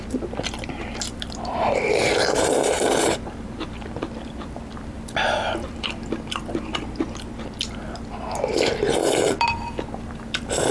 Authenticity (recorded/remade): remade